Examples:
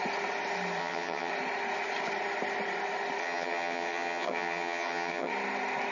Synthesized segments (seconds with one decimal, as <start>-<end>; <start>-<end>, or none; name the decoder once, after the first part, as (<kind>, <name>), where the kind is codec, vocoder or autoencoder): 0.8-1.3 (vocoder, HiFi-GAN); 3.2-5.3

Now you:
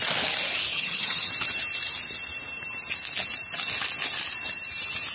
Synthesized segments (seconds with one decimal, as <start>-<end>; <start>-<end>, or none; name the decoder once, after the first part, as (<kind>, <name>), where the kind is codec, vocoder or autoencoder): 0.7-1.3 (vocoder, HiFi-GAN)

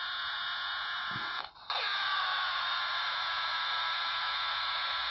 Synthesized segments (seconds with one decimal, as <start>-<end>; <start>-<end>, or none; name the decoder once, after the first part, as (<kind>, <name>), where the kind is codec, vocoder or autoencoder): none

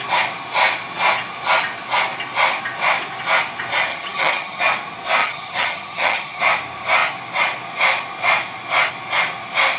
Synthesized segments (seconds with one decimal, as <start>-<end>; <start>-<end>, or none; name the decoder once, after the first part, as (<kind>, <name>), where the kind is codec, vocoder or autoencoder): 3.9-4.6 (vocoder, HiFi-GAN); 5.2-6.4

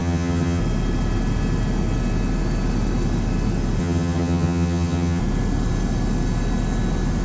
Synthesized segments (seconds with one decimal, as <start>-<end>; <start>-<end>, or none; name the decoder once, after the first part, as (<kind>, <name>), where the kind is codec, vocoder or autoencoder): 0.0-0.6 (vocoder, HiFi-GAN); 3.8-5.2

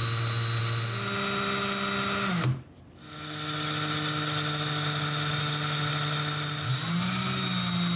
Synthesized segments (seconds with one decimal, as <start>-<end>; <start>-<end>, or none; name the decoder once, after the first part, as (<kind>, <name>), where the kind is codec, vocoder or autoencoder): none